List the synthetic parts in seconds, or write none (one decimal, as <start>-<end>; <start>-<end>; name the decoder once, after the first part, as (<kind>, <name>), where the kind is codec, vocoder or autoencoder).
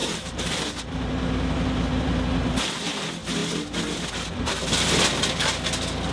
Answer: 0.0-0.6 (vocoder, BigVGAN v2)